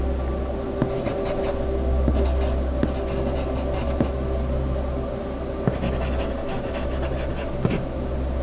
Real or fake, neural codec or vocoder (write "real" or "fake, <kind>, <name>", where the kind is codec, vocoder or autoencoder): real